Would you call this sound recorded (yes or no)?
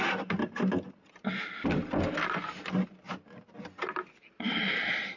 yes